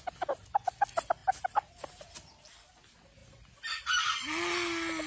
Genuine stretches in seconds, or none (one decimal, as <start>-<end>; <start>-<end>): 0.0-5.1